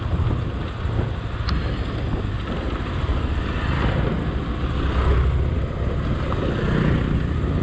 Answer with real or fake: real